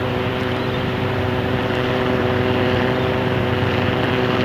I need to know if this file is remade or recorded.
remade